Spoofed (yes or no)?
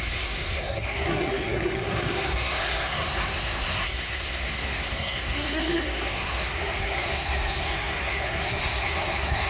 yes